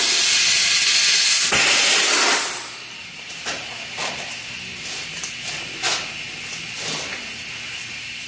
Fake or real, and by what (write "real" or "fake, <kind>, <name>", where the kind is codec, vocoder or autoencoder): real